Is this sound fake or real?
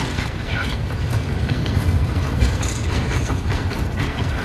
fake